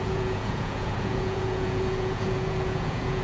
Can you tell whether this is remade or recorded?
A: remade